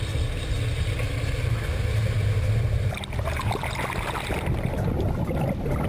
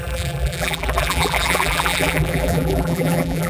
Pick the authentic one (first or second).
first